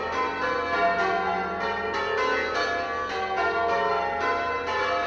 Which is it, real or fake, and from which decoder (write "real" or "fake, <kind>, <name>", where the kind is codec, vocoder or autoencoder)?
real